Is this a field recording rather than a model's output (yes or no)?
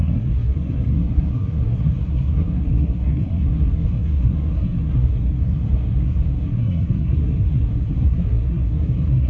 no